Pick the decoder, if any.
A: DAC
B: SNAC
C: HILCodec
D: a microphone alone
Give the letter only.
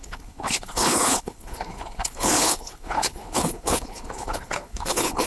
C